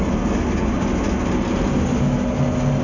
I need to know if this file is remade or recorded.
recorded